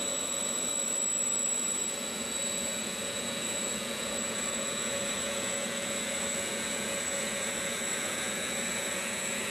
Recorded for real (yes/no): no